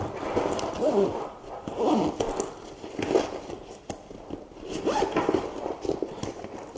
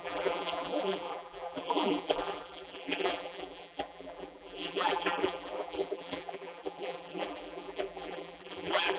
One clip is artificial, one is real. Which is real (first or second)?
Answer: first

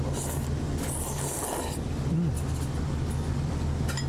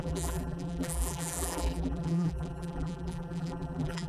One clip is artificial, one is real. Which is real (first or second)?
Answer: first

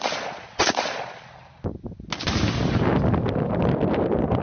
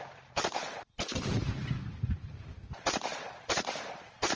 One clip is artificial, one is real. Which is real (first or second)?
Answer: first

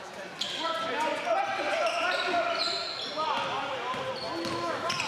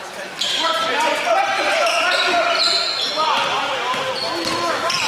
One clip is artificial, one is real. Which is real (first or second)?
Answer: first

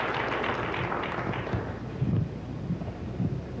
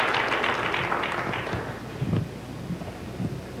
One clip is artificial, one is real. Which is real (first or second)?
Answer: second